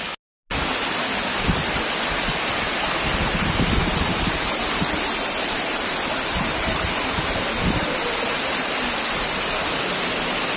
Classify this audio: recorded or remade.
recorded